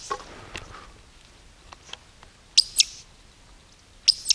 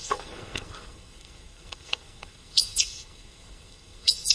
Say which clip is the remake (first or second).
second